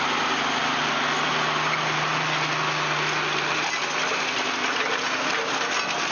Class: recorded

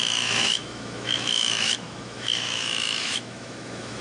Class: remade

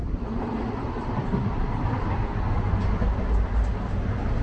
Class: recorded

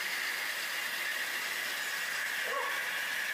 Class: recorded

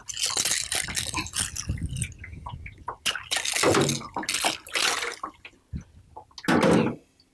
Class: recorded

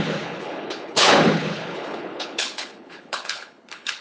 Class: remade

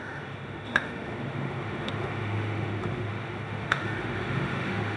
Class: remade